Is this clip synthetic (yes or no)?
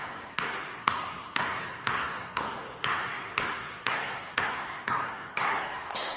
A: yes